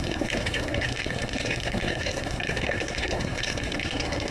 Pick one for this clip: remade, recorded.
remade